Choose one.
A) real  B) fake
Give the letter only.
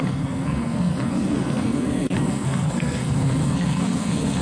B